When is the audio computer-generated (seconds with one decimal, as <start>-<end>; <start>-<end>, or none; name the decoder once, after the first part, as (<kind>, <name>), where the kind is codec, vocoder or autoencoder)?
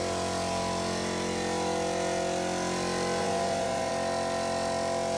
3.2-3.9 (vocoder, Vocos)